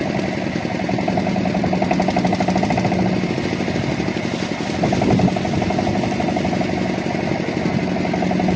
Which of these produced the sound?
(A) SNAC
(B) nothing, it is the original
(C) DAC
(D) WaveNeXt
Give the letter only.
B